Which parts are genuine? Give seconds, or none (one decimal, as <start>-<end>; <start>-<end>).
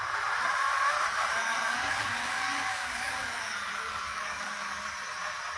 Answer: 0.0-1.4; 4.8-5.6